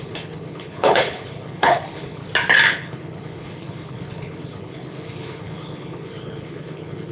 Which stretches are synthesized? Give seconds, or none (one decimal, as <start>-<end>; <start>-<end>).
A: 0.0-2.2; 2.7-7.1